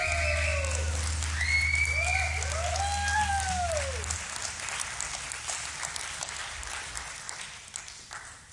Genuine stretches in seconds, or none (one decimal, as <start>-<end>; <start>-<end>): 0.0-8.5